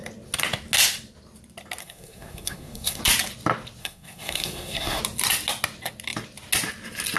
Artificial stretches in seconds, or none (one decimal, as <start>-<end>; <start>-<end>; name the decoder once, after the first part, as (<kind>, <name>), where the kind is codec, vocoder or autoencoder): 1.8-3.0 (codec, SNAC); 3.8-5.0